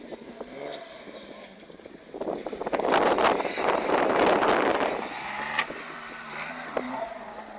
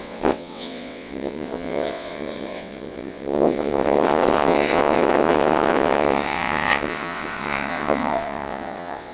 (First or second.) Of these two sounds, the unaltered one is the first